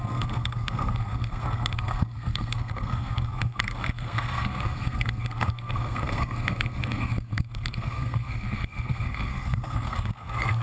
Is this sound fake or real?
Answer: fake